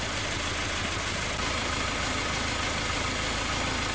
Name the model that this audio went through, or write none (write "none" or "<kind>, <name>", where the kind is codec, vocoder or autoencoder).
none